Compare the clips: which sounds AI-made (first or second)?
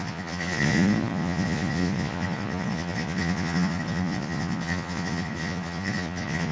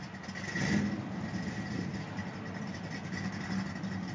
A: first